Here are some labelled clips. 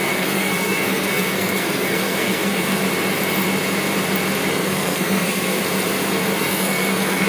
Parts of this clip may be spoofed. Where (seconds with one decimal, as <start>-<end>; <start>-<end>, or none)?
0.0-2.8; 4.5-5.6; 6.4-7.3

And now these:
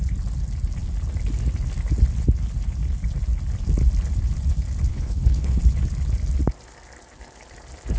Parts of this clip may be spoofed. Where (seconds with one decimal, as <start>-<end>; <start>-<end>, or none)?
4.9-5.6

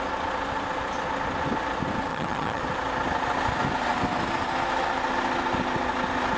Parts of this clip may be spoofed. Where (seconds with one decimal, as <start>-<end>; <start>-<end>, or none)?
2.1-2.6

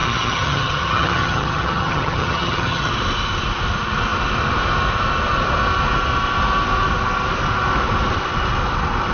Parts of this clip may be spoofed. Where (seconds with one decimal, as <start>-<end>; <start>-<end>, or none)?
0.0-2.9

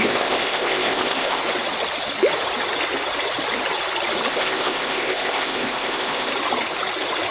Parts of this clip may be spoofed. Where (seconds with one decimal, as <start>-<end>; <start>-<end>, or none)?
0.0-1.4; 4.3-6.3

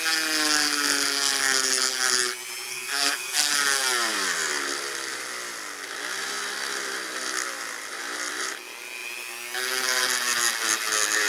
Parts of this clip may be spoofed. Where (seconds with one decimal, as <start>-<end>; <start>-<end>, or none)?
2.7-3.5

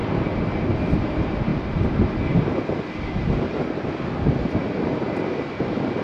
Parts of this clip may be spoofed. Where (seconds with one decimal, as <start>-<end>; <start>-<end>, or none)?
none